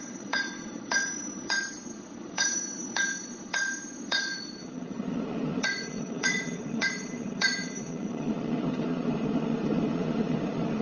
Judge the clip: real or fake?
fake